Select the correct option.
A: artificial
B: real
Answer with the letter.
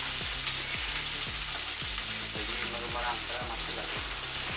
B